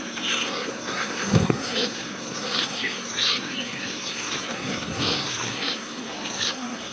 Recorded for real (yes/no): no